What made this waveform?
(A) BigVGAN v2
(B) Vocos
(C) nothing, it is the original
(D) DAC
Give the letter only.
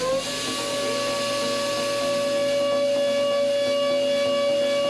C